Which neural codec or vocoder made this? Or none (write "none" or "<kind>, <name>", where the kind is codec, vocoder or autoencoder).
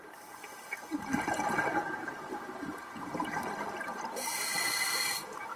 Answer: vocoder, BigVGAN v2